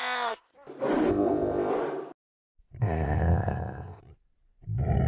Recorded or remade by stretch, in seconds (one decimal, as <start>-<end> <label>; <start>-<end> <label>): 0.0-0.5 remade; 0.5-1.1 recorded; 1.1-1.7 remade; 1.7-2.8 recorded; 2.8-4.0 remade; 4.0-5.1 recorded